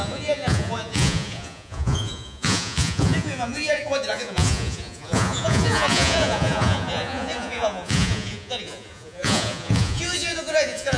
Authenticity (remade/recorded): remade